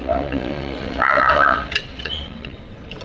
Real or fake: fake